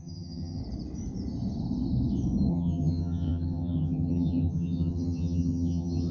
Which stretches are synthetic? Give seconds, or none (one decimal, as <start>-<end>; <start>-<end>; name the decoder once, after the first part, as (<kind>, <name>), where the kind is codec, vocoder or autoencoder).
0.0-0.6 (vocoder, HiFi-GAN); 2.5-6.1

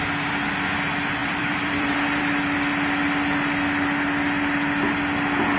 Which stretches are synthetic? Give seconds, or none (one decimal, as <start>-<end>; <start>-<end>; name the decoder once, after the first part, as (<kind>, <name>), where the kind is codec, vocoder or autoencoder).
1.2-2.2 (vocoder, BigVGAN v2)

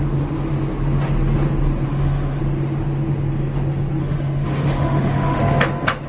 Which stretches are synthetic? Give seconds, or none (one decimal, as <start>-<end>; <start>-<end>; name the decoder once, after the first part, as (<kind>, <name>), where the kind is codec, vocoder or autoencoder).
1.9-2.4 (autoencoder, DAC-VAE); 4.0-5.4